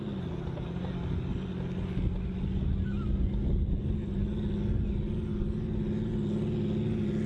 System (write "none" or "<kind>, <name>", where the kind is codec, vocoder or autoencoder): none